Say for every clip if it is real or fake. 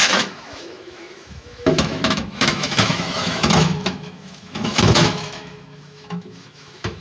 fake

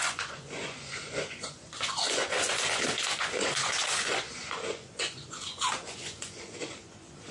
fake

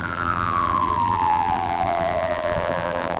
fake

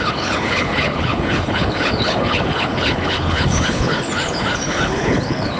fake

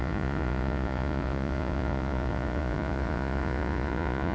fake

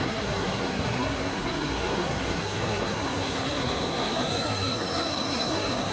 fake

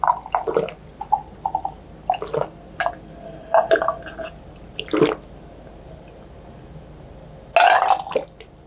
real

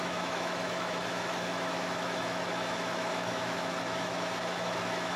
fake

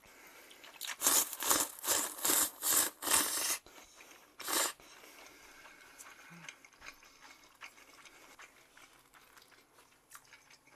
real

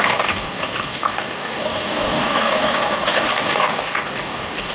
fake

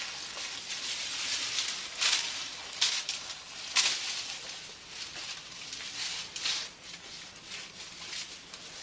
real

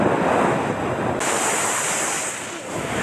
real